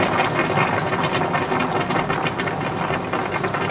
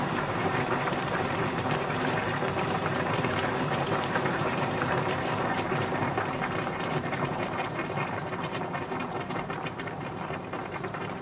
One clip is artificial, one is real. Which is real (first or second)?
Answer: first